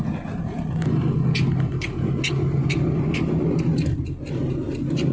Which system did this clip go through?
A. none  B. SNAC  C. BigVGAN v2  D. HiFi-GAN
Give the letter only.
A